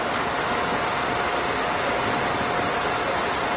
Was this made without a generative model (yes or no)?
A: yes